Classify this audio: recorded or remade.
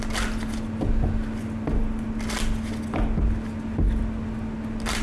recorded